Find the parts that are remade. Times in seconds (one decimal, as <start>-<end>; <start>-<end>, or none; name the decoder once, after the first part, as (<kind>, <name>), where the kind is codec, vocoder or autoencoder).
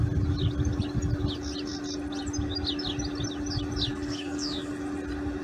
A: 3.9-4.7 (codec, DAC)